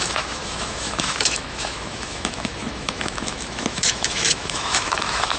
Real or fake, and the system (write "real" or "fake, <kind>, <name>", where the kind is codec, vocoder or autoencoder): fake, autoencoder, DAC-VAE